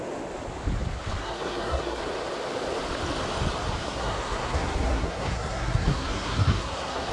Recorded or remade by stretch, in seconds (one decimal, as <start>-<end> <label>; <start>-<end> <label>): 0.0-1.2 recorded; 1.2-2.0 remade; 2.0-3.8 recorded; 3.8-7.1 remade